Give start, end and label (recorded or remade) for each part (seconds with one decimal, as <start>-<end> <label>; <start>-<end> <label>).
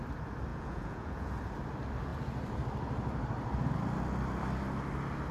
0.0-0.5 recorded; 0.5-1.4 remade; 1.4-5.3 recorded